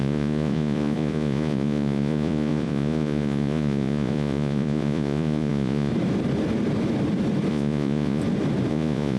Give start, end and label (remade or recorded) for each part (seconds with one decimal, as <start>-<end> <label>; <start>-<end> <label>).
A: 0.0-5.9 remade; 5.9-7.5 recorded; 7.5-8.2 remade; 8.2-8.7 recorded; 8.7-9.2 remade